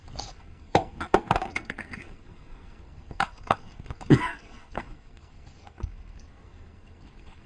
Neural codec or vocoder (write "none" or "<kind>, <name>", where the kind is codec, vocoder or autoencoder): codec, SNAC